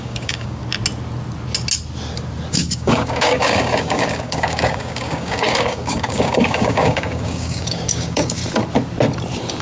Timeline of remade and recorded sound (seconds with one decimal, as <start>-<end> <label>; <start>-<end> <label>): 0.0-0.6 remade; 0.6-2.5 recorded; 2.5-8.4 remade; 8.4-9.6 recorded